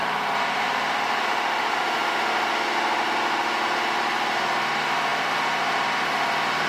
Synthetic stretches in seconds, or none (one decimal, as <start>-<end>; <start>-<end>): none